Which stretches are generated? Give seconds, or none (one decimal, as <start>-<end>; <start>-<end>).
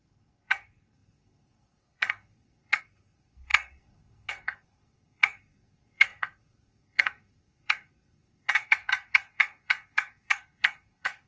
0.0-11.3